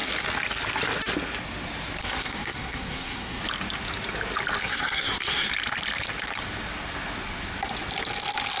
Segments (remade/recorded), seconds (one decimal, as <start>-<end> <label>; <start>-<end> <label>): 0.0-2.0 recorded; 2.0-3.4 remade; 3.4-4.6 recorded; 4.6-5.5 remade; 5.5-8.6 recorded